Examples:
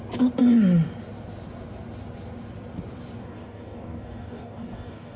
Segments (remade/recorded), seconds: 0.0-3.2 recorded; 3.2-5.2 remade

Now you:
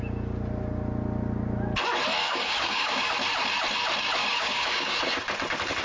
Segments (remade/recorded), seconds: 0.0-2.2 recorded; 2.2-3.1 remade; 3.1-4.2 recorded; 4.2-5.0 remade; 5.0-5.8 recorded